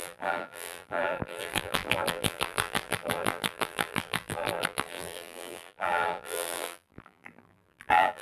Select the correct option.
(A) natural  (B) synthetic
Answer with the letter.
B